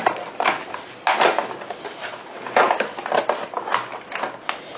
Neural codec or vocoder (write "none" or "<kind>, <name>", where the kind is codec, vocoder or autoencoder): none